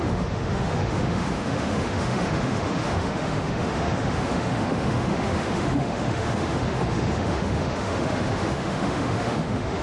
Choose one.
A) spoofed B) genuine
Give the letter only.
A